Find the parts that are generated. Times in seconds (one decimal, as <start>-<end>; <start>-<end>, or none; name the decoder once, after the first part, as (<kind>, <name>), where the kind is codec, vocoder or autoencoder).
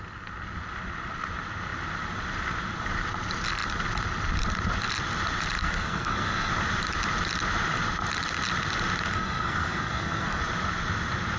5.6-6.5 (codec, SNAC); 9.1-10.4